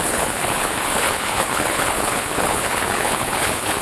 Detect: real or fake fake